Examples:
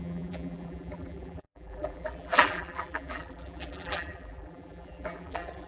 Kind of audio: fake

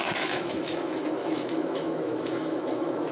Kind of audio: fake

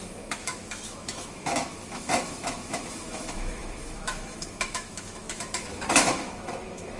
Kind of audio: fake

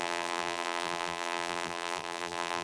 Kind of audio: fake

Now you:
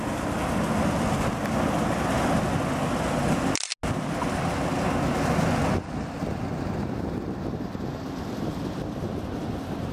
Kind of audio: real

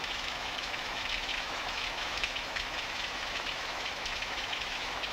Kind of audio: fake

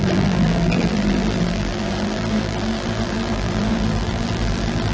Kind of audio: fake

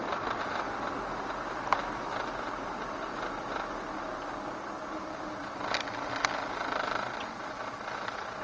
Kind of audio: real